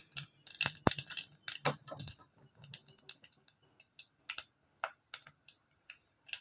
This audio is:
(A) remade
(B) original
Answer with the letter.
B